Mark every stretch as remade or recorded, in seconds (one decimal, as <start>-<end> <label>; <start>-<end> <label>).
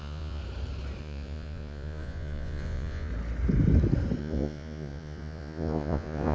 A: 0.0-0.4 remade; 0.4-1.0 recorded; 1.0-3.1 remade; 3.1-4.2 recorded; 4.2-6.3 remade